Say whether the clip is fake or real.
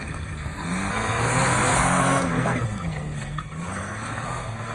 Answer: fake